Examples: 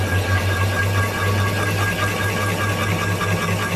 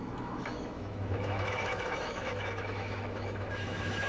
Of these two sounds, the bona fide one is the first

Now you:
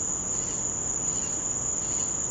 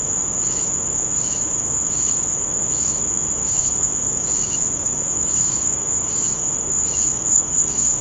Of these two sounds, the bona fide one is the first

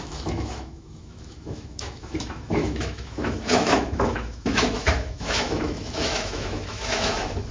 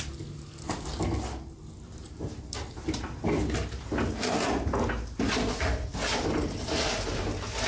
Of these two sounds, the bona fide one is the second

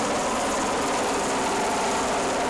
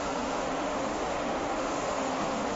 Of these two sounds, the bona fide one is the first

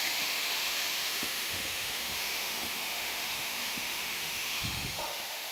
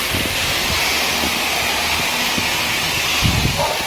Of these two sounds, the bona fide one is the second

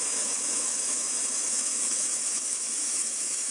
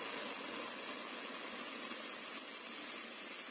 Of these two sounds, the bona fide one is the second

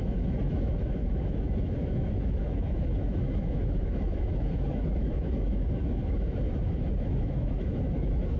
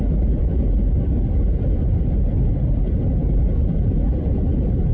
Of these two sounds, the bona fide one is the second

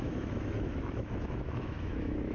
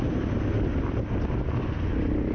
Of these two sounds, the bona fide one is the second